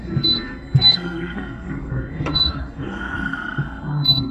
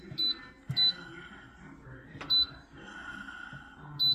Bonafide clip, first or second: second